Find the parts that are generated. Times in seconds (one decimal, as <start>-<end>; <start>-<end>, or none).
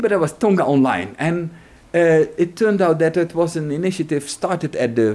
none